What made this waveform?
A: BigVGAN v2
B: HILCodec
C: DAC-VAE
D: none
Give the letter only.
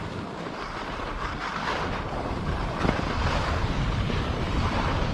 A